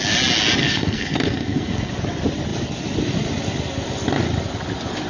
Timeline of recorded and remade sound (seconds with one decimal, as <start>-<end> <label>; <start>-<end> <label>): 0.0-0.6 recorded; 0.6-1.9 remade; 1.9-5.1 recorded